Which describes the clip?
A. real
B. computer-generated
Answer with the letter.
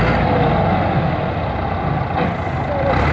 A